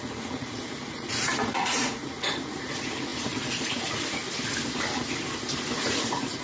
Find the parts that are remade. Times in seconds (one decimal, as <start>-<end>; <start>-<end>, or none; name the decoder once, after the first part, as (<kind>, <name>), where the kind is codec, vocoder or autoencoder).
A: 0.0-4.2 (vocoder, Vocos); 5.8-6.4

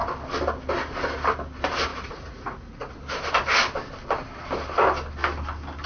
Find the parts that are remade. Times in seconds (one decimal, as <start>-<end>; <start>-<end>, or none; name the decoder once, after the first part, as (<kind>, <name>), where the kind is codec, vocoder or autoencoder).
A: 1.9-2.9 (vocoder, Vocos)

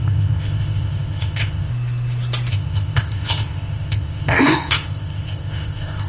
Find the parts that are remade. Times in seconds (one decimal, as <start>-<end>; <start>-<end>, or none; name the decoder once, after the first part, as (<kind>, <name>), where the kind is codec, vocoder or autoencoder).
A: 0.0-1.7 (codec, ZipCodec); 2.5-6.1

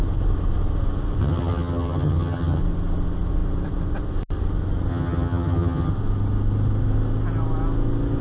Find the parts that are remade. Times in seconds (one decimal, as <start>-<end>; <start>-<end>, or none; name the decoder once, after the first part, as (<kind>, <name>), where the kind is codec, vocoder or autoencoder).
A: 1.2-2.6 (vocoder, HiFi-GAN); 4.9-5.9

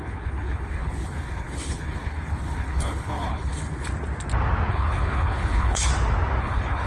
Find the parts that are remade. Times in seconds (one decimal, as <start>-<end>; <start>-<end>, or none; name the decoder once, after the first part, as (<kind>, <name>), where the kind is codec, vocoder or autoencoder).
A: 0.0-3.9 (codec, HILCodec); 4.7-5.9; 6.4-6.9

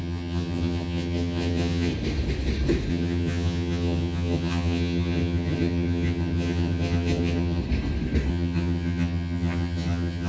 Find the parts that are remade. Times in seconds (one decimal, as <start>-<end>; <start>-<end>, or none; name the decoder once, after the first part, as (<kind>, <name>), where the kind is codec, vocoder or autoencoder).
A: 0.0-1.9 (vocoder, HiFi-GAN); 2.9-7.6; 8.3-10.3